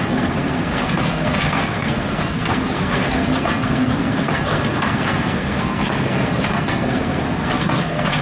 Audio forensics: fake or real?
fake